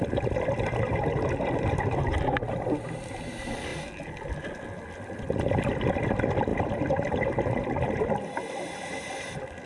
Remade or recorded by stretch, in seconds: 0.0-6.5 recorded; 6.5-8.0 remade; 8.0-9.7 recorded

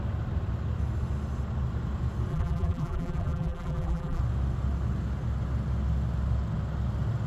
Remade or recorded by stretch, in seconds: 0.0-2.3 recorded; 2.3-4.2 remade; 4.2-7.3 recorded

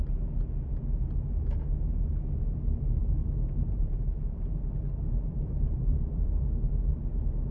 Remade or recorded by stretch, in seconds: 0.0-3.0 recorded; 3.0-6.4 remade; 6.4-7.5 recorded